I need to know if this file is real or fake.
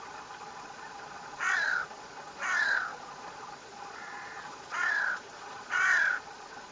fake